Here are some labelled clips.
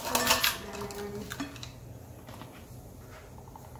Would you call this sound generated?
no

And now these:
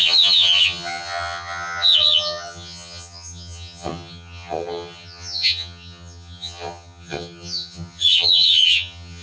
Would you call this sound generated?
yes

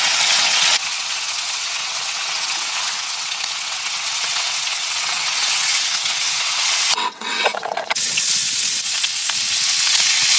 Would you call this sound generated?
yes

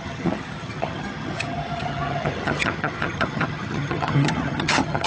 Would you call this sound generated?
yes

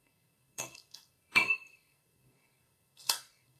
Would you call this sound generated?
yes